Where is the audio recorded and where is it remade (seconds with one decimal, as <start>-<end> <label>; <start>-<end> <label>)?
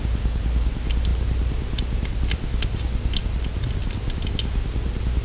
0.0-5.2 recorded